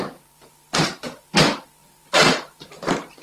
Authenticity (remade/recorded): remade